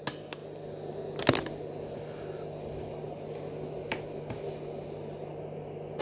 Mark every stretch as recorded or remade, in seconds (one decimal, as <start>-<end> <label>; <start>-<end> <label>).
0.0-6.0 recorded